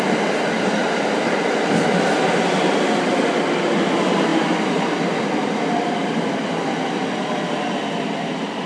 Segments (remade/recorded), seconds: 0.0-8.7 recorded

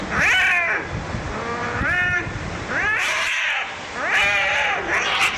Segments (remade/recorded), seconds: 0.0-1.6 recorded; 1.6-3.7 remade; 3.7-5.4 recorded

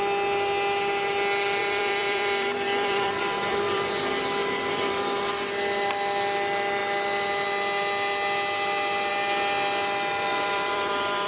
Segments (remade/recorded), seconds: 0.0-1.6 recorded; 1.6-3.9 remade; 3.9-4.4 recorded; 4.4-5.2 remade; 5.2-10.3 recorded; 10.3-11.3 remade